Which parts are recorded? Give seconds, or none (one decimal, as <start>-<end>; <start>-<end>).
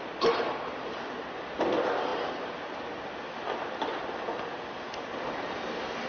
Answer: 0.0-6.1